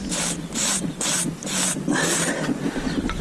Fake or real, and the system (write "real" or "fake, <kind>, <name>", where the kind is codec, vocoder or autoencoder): real